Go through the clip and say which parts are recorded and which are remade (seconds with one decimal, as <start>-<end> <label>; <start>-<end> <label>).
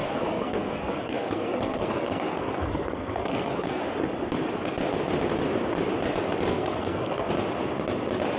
0.0-3.8 remade; 3.8-6.5 recorded; 6.5-7.3 remade; 7.3-8.4 recorded